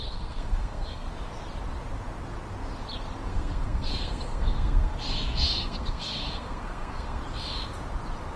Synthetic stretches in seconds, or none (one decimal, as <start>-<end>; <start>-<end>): 0.0-1.1; 3.3-7.2